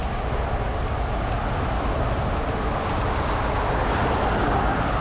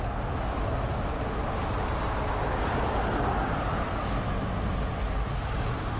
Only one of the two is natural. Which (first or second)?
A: second